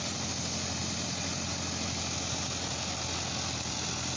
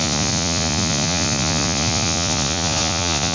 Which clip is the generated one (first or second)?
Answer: second